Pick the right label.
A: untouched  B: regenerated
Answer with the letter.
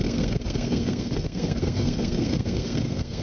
B